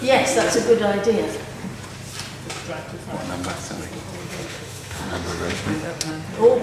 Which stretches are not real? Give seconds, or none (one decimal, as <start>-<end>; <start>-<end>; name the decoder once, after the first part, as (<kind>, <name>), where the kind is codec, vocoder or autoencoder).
4.2-6.1 (autoencoder, DAC-VAE)